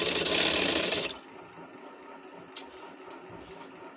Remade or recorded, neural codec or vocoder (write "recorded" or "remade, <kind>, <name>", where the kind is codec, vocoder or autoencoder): recorded